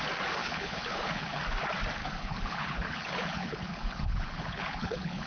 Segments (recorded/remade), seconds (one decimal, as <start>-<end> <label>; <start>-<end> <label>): 0.0-0.4 recorded; 0.4-1.4 remade; 1.4-2.0 recorded; 2.0-5.3 remade

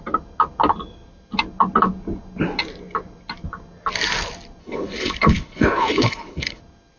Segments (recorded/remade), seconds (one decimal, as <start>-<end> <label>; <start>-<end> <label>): 0.0-4.6 recorded; 4.6-6.6 remade; 6.6-7.0 recorded

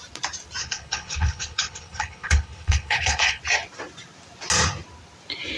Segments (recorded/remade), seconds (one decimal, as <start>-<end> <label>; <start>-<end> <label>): 0.0-0.6 recorded; 0.6-3.4 remade; 3.4-5.6 recorded

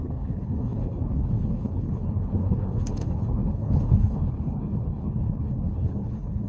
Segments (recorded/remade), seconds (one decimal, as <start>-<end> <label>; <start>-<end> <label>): 0.0-6.5 remade

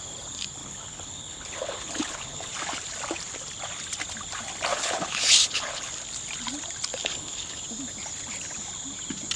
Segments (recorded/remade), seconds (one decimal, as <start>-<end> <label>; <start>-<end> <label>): 0.0-0.6 recorded; 0.6-2.5 remade; 2.5-4.7 recorded; 4.7-5.9 remade; 5.9-7.0 recorded; 7.0-7.6 remade; 7.6-9.4 recorded

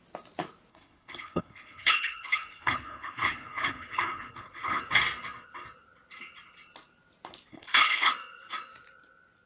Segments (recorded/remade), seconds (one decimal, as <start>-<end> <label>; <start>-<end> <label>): 0.0-0.7 recorded; 0.7-4.8 remade; 4.8-7.5 recorded; 7.5-8.1 remade; 8.1-9.5 recorded